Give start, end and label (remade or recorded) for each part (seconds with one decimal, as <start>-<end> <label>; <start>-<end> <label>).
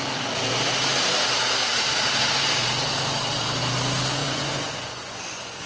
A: 0.0-4.2 recorded; 4.2-5.7 remade